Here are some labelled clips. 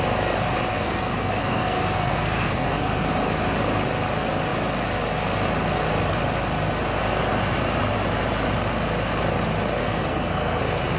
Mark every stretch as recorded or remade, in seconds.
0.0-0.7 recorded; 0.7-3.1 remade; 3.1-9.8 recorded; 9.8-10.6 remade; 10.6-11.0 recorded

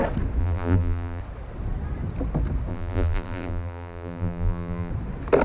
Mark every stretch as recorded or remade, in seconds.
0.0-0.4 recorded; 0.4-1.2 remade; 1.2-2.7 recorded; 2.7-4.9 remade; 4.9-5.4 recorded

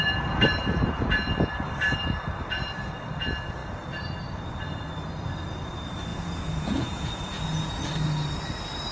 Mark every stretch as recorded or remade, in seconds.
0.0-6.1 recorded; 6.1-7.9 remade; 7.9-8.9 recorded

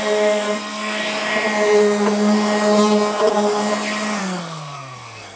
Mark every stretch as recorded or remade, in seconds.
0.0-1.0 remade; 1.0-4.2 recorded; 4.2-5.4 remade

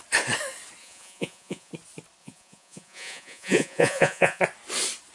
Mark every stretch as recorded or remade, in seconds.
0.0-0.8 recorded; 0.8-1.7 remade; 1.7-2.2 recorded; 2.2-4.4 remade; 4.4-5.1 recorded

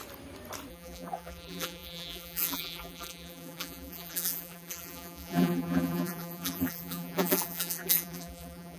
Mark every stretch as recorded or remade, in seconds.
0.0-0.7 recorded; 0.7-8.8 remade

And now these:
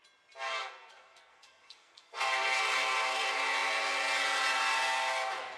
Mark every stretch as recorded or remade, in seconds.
0.0-0.6 recorded; 0.6-2.6 remade; 2.6-5.6 recorded